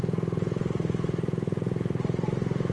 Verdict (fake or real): real